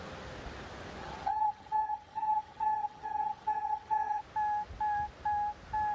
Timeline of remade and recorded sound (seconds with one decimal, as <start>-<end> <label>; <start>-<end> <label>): 0.0-1.0 recorded; 1.0-4.2 remade; 4.2-5.9 recorded